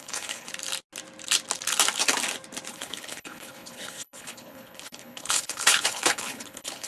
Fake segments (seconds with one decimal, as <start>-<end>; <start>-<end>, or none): 0.0-0.5; 2.7-6.9